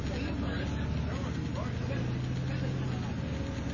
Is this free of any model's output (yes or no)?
yes